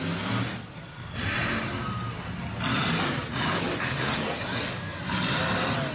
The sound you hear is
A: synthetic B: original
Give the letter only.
B